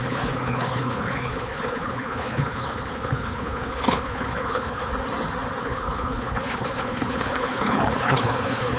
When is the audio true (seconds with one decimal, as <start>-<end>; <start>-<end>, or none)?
4.9-5.6